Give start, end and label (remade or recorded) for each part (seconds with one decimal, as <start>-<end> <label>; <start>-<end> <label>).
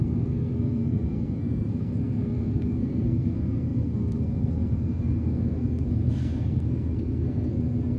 0.0-8.0 remade